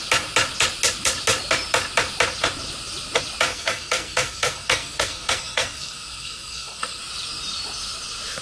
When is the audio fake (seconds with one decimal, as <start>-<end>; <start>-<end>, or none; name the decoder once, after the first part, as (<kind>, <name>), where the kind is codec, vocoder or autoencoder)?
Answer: 3.5-7.0 (codec, SNAC)